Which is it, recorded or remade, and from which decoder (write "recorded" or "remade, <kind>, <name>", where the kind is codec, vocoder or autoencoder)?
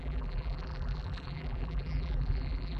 remade, vocoder, BigVGAN v2